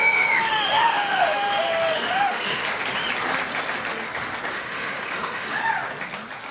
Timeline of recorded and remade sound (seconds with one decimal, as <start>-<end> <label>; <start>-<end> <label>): 0.0-2.6 remade; 2.6-4.5 recorded; 4.5-5.6 remade; 5.6-6.5 recorded